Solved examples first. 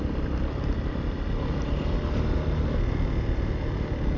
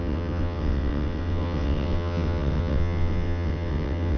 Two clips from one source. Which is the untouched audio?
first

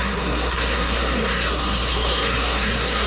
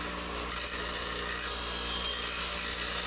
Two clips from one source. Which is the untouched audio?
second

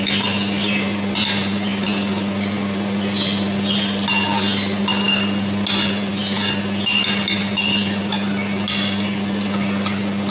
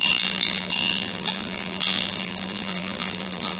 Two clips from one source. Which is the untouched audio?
first